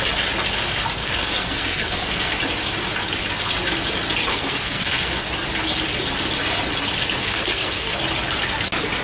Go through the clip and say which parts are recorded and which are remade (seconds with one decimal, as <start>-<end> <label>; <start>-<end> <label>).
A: 0.0-1.0 recorded; 1.0-2.4 remade; 2.4-4.3 recorded; 4.3-5.2 remade; 5.2-7.2 recorded; 7.2-8.0 remade; 8.0-9.0 recorded